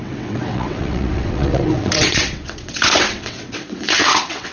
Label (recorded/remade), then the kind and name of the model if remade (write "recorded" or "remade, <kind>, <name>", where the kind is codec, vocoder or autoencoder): remade, vocoder, WaveNeXt